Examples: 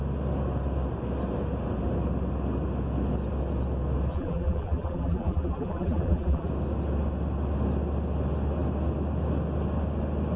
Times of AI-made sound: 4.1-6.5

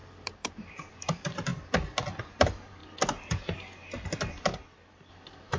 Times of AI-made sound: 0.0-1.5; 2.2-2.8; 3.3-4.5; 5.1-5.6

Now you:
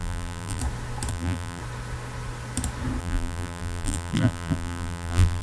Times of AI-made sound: 0.0-0.6; 1.1-1.6; 3.0-5.4

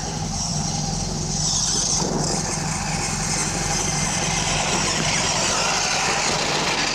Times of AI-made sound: 0.0-0.5; 1.6-3.4; 4.2-6.9

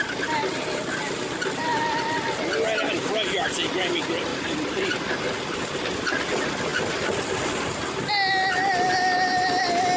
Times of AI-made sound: 4.3-5.0